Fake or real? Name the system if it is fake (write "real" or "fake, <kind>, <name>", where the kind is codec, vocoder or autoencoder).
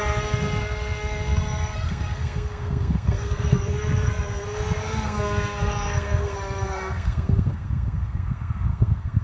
fake, codec, SNAC